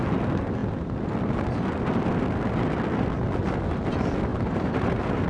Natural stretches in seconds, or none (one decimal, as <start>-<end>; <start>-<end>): 0.0-4.3